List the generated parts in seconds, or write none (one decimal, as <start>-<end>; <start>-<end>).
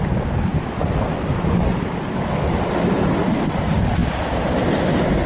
none